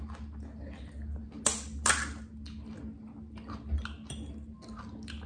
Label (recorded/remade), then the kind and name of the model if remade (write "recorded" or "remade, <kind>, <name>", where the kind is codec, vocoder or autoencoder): recorded